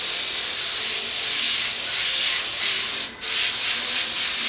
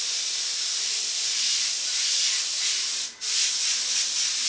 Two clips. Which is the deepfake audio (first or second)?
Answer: first